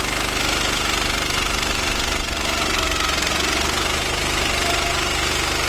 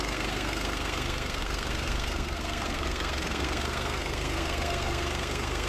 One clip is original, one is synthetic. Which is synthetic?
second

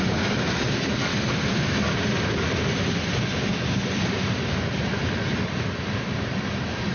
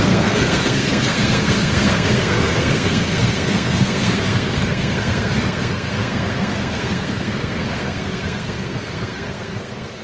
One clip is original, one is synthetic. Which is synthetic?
second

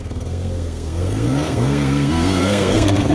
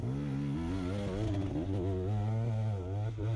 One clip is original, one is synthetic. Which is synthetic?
first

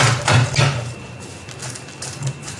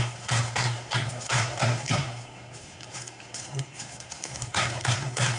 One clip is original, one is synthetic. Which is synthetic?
second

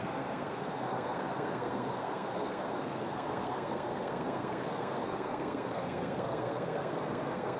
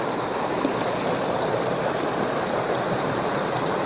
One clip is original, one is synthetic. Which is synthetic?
first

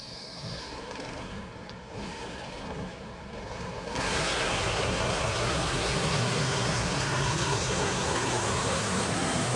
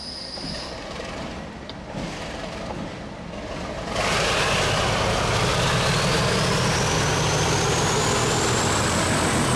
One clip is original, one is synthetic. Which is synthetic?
first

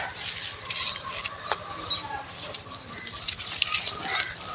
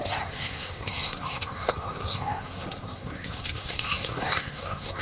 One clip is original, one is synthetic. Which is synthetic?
second